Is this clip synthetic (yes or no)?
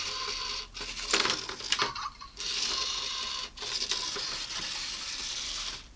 yes